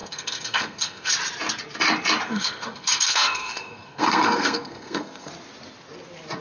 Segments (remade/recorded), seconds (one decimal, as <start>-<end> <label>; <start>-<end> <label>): 0.0-1.1 remade; 1.1-2.3 recorded; 2.3-5.3 remade; 5.3-6.4 recorded